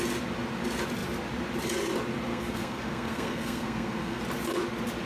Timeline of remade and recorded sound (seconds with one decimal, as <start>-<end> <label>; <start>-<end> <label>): 0.0-2.3 recorded; 2.3-4.2 remade; 4.2-5.1 recorded